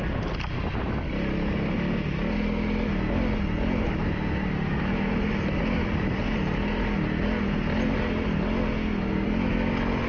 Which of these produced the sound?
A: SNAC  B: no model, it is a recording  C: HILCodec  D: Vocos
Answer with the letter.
B